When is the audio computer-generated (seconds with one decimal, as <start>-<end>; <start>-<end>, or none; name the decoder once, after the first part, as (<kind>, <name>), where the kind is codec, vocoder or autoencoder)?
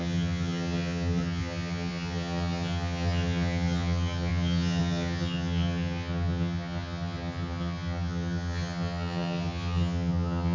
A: 0.0-10.5 (vocoder, HiFi-GAN)